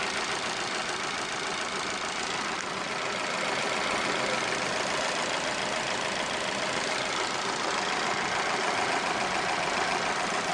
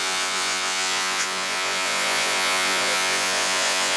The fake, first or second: second